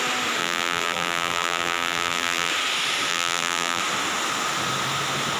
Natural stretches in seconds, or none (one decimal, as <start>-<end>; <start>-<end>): 0.0-0.4; 2.5-3.1; 3.8-5.4